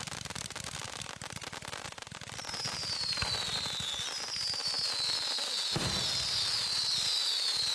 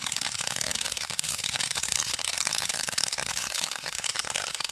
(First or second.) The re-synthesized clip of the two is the second